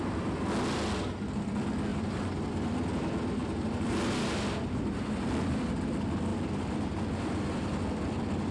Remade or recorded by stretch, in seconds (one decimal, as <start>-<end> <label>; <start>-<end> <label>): 0.0-1.9 recorded; 1.9-2.5 remade; 2.5-3.4 recorded; 3.4-5.7 remade; 5.7-6.3 recorded; 6.3-7.9 remade; 7.9-8.5 recorded